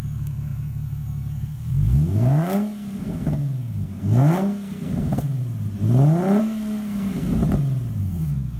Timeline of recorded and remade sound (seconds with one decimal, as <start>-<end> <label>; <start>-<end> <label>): 0.0-5.4 remade; 5.4-6.4 recorded; 6.4-7.4 remade; 7.4-8.0 recorded; 8.0-8.6 remade